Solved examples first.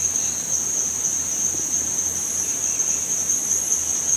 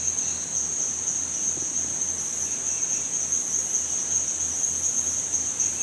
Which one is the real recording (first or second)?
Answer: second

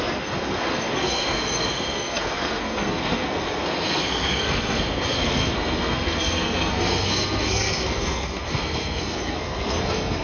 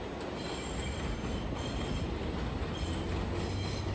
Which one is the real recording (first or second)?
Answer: second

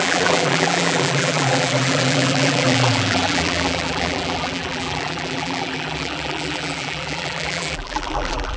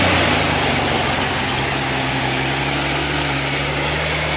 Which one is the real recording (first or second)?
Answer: second